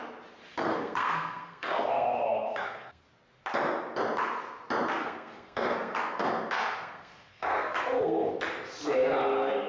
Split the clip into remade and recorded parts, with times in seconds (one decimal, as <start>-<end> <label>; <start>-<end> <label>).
0.0-0.5 recorded; 0.5-3.0 remade; 3.0-5.0 recorded; 5.0-8.3 remade; 8.3-9.7 recorded